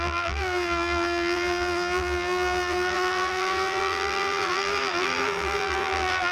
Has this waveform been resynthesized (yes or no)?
yes